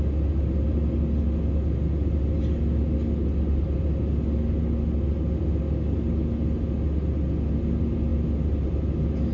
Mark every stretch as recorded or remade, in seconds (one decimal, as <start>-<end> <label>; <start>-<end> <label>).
0.0-9.3 recorded